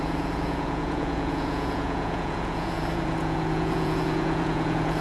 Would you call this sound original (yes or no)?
no